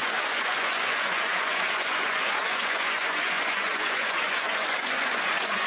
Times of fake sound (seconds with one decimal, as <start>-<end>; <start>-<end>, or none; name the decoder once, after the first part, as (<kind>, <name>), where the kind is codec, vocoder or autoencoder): 0.0-5.7 (vocoder, Vocos)